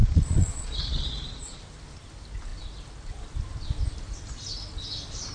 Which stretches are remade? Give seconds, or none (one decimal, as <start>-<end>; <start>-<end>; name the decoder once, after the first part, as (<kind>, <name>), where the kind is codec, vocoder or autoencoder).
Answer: 0.0-1.6 (vocoder, Vocos)